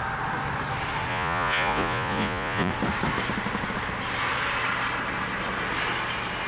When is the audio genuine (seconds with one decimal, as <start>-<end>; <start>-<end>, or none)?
0.0-1.1; 2.7-6.5